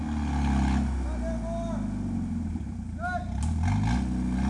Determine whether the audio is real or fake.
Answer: real